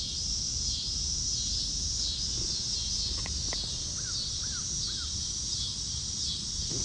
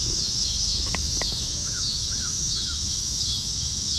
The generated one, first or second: second